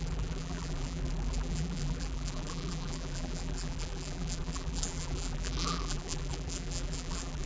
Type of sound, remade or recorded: remade